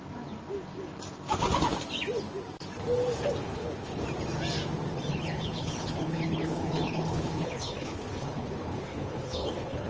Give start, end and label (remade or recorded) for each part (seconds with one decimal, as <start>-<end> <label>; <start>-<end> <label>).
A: 0.0-3.4 recorded; 3.4-4.0 remade; 4.0-5.1 recorded; 5.1-9.9 remade